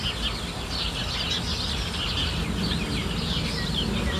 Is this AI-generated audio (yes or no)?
no